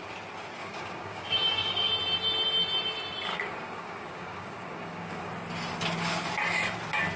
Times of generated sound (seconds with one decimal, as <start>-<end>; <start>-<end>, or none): 0.6-1.9; 3.3-5.3